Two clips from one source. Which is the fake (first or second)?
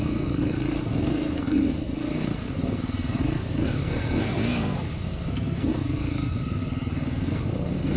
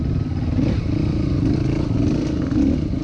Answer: first